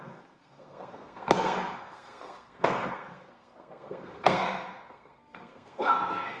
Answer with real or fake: fake